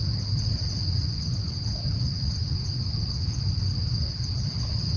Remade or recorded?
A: recorded